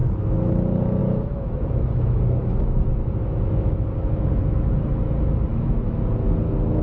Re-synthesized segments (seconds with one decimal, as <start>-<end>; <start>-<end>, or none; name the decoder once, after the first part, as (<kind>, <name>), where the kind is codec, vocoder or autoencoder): 0.0-0.5 (autoencoder, DAC-VAE); 1.0-5.1; 5.5-6.0